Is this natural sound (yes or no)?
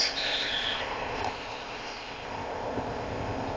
no